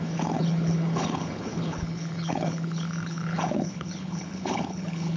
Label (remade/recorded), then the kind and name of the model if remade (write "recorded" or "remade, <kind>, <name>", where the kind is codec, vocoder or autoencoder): remade, codec, HILCodec